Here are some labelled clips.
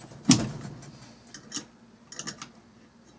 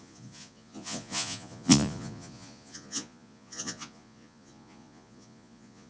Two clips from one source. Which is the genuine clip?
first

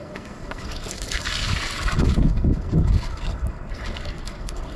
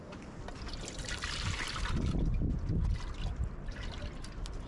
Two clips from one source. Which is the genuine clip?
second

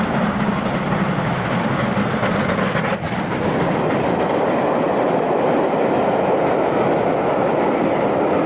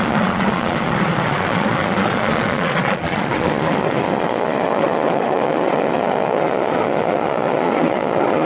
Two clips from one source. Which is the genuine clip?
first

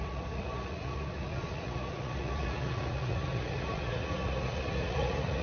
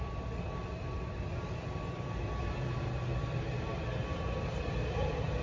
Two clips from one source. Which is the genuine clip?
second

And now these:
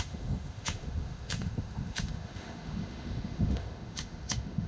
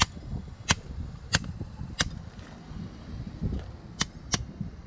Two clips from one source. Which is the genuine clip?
second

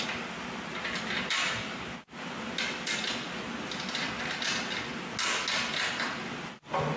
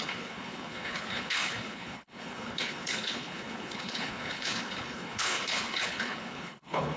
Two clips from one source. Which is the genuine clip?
first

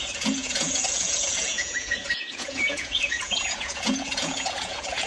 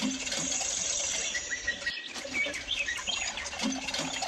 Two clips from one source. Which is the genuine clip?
second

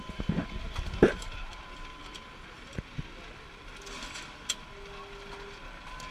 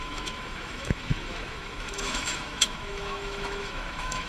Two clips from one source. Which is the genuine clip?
first